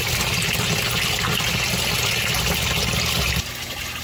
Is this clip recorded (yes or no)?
yes